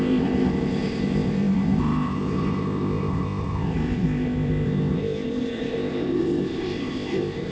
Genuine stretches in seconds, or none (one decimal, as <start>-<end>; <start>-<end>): none